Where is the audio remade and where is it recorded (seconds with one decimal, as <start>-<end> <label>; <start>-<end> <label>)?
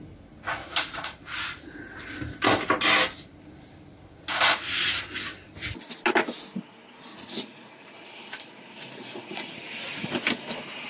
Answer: 0.0-0.6 recorded; 0.6-1.7 remade; 1.7-4.1 recorded; 4.1-4.9 remade; 4.9-7.1 recorded; 7.1-9.5 remade; 9.5-10.9 recorded